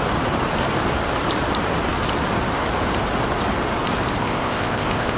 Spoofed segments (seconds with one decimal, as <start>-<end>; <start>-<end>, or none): 4.2-5.2